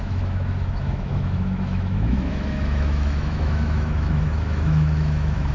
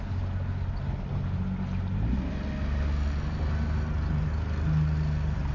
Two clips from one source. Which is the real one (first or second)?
second